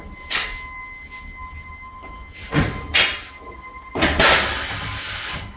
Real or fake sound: real